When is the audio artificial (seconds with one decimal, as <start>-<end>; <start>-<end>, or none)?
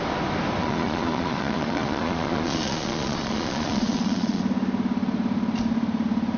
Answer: 0.6-4.4